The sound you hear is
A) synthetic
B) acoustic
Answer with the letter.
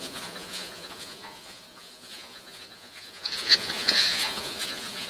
A